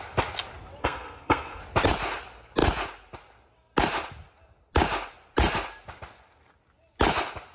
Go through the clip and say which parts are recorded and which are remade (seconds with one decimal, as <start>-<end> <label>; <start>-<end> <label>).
0.0-0.8 recorded; 0.8-1.6 remade; 1.6-7.5 recorded